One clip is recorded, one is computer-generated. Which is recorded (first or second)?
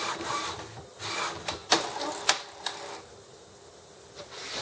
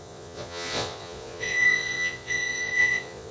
first